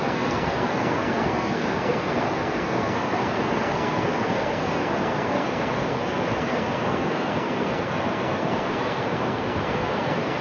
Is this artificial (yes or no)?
yes